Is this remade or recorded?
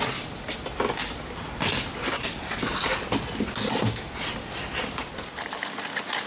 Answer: recorded